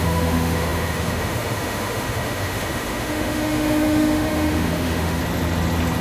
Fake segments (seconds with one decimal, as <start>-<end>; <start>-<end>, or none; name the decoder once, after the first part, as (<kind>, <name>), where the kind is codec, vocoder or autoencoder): 0.0-5.2 (autoencoder, DAC-VAE)